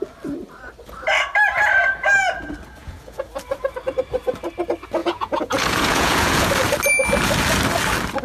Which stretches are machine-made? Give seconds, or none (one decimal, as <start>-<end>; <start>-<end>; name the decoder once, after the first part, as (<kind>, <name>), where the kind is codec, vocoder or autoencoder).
2.8-3.3 (vocoder, Vocos); 5.0-6.5